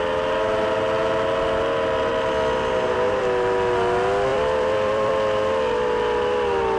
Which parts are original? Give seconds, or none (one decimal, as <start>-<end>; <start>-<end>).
0.0-4.3; 5.1-6.8